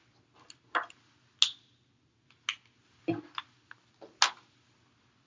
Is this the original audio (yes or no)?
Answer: yes